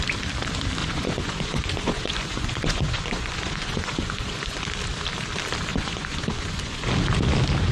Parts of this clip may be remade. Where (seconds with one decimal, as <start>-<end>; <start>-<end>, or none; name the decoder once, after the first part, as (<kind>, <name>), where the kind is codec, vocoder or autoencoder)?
0.8-4.6 (vocoder, Vocos); 5.7-6.9